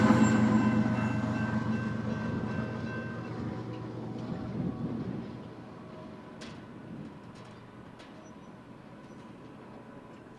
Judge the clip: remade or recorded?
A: recorded